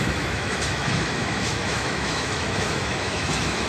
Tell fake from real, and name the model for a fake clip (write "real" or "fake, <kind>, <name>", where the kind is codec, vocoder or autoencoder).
fake, autoencoder, DAC-VAE